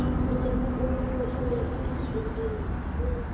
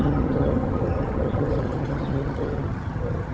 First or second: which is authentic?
first